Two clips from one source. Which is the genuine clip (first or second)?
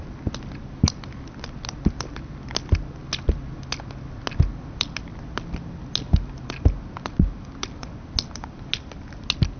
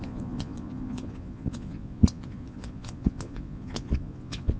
first